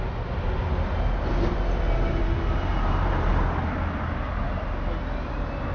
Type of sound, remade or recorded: recorded